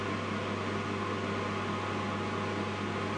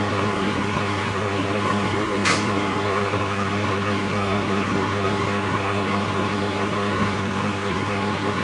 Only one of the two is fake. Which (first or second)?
second